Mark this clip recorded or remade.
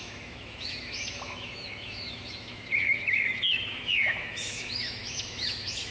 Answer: remade